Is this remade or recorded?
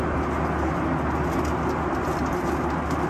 recorded